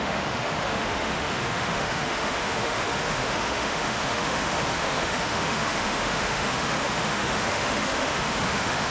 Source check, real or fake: fake